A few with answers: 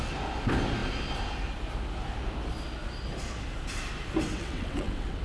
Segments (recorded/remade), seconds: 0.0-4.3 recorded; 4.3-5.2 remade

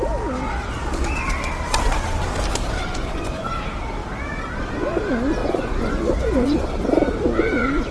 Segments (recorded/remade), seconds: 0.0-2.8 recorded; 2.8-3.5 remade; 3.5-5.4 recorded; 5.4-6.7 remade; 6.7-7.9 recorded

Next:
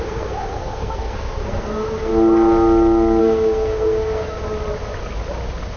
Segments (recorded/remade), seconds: 0.0-2.1 remade; 2.1-3.2 recorded; 3.2-4.4 remade; 4.4-5.8 recorded